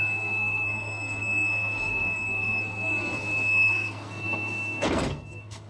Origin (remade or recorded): remade